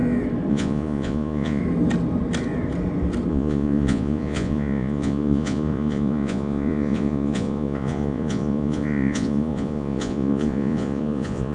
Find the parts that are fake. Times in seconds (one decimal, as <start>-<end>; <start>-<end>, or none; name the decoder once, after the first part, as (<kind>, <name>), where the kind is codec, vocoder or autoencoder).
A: 0.5-1.6 (vocoder, Vocos); 3.3-11.5